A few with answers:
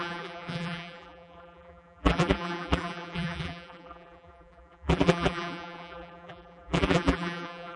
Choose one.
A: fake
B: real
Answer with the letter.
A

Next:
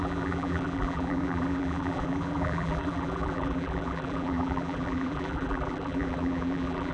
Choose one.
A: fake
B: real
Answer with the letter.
A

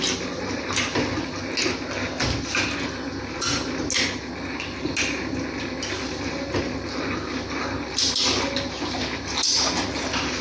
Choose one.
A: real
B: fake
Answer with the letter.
A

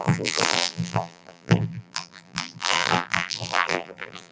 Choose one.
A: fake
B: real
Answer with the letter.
A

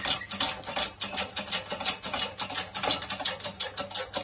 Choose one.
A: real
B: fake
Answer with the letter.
A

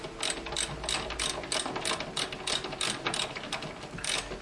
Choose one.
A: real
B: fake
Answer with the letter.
A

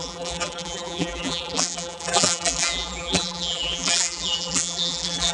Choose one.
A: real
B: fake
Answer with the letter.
B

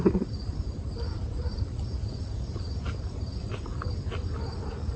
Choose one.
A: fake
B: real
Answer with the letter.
A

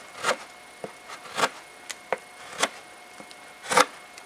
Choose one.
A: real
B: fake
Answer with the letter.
A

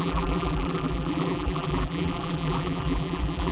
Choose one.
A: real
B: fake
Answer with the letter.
B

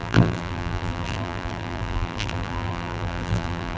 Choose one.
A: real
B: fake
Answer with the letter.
B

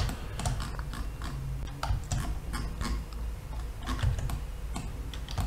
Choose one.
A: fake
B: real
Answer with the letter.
B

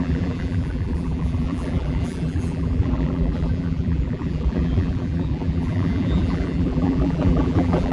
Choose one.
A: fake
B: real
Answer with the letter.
A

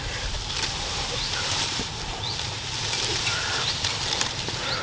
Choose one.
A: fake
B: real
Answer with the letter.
A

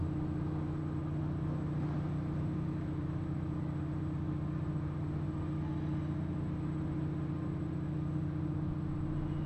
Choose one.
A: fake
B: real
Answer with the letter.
B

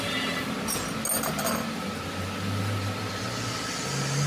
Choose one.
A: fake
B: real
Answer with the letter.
B